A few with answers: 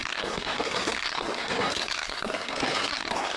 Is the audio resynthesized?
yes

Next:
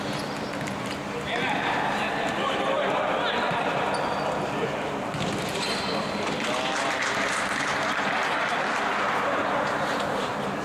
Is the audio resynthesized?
no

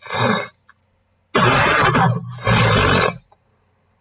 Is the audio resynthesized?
no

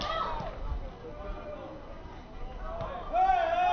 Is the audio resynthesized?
no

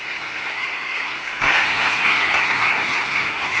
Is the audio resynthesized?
yes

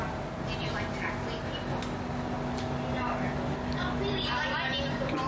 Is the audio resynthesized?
no